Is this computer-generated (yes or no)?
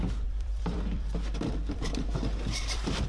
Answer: yes